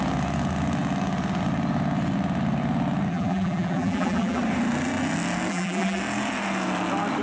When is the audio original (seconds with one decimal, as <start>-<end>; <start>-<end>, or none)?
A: 0.0-3.1; 4.4-5.5; 6.0-7.2